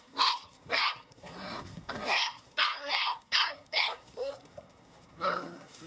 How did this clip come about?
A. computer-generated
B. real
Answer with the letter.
A